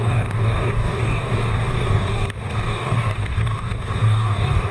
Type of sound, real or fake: fake